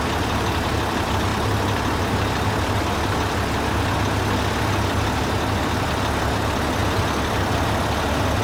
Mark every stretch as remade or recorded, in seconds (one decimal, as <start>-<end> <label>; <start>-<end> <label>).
0.0-8.4 recorded